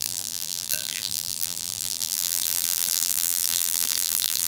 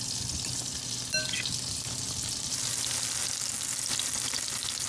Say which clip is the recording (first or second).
second